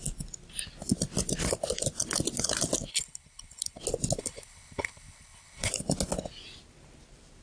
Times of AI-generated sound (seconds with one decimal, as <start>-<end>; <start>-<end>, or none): 2.9-3.8; 4.2-5.7